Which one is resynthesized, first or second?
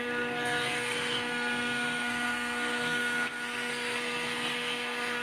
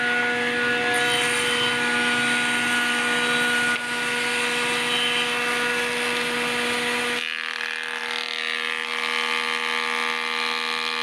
first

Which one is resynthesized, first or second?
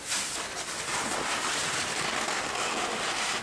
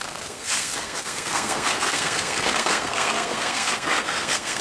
second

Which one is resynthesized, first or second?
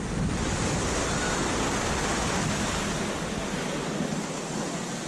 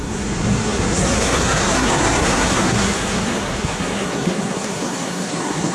second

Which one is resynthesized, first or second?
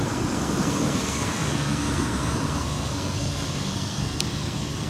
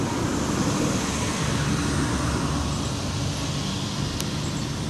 first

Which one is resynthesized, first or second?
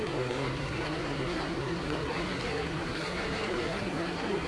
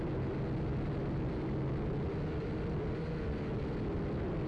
first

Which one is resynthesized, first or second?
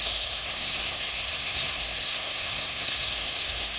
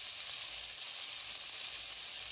first